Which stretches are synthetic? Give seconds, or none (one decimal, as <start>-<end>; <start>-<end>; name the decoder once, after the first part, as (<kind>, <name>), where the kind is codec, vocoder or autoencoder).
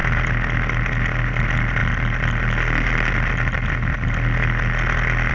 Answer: none